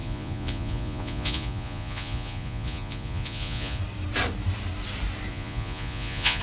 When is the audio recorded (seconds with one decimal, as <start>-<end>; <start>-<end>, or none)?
3.8-5.3